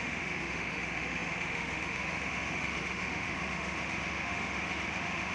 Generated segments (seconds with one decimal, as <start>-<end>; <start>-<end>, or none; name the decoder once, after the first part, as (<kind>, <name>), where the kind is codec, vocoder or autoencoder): 0.0-5.3 (autoencoder, DAC-VAE)